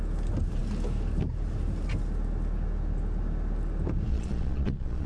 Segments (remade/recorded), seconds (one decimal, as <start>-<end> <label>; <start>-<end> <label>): 0.0-4.1 recorded; 4.1-5.1 remade